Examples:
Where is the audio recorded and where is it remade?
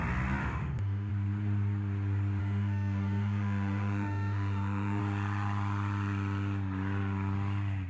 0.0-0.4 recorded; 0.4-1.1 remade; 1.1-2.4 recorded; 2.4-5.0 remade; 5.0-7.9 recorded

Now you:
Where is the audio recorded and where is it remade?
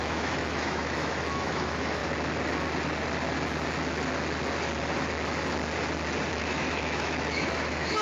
0.0-2.0 remade; 2.0-6.3 recorded; 6.3-8.0 remade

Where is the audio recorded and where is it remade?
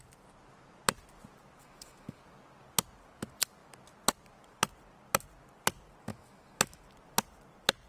0.0-1.6 recorded; 1.6-2.2 remade; 2.2-6.1 recorded; 6.1-6.8 remade; 6.8-7.9 recorded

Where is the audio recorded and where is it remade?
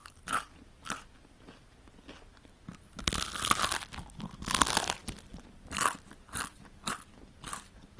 0.0-8.0 recorded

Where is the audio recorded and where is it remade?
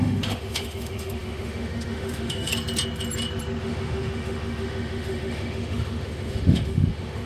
0.0-2.5 remade; 2.5-3.6 recorded; 3.6-7.3 remade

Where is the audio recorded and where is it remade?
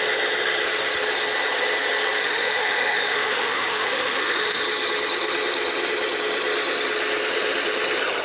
0.0-2.2 recorded; 2.2-4.6 remade; 4.6-8.2 recorded